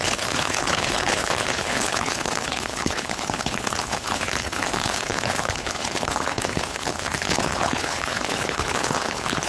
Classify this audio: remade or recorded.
remade